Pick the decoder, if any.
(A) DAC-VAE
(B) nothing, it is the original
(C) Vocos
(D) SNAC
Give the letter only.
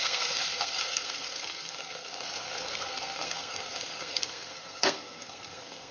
D